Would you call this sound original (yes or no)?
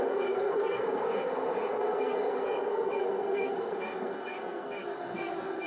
no